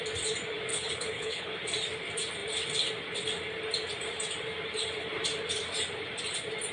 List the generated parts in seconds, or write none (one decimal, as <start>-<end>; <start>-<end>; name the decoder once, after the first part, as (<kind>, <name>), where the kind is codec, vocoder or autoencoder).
0.7-1.5 (codec, HILCodec)